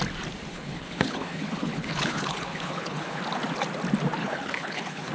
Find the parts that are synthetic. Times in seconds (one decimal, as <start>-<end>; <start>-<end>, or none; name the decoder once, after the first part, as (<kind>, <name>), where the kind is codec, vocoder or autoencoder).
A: 0.5-3.2 (codec, HILCodec); 4.2-5.1